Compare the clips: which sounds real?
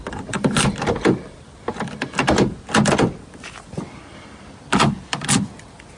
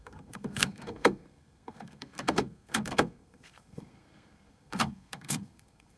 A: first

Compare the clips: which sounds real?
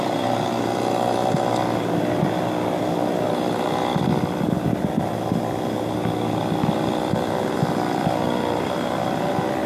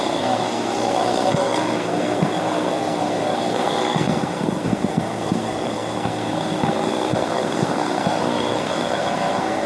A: first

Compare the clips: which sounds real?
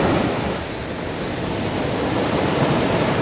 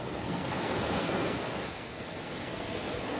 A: first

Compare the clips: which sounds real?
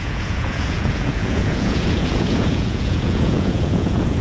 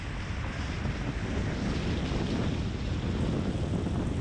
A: second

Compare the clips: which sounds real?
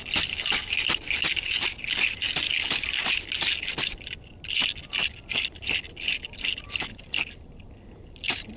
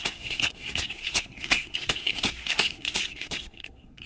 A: first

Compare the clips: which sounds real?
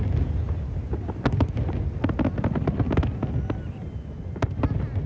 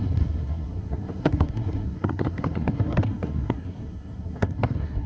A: first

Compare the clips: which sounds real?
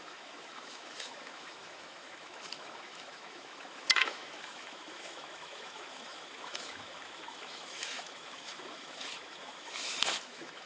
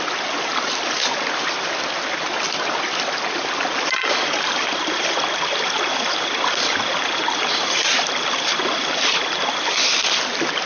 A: second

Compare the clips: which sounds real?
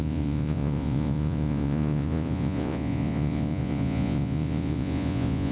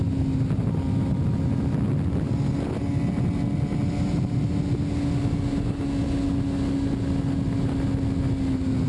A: second